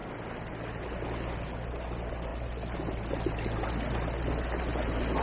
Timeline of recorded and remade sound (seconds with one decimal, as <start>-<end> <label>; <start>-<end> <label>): 0.0-5.2 recorded